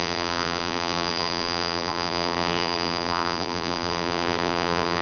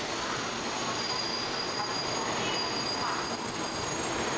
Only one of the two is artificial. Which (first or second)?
first